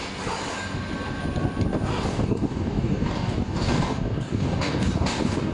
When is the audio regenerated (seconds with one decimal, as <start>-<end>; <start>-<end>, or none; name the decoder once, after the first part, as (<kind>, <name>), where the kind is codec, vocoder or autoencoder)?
2.1-5.5 (codec, DAC)